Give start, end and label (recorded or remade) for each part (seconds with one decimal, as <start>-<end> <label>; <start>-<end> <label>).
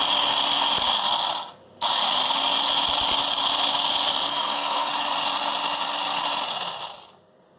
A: 0.0-4.1 recorded; 4.1-4.9 remade; 4.9-7.6 recorded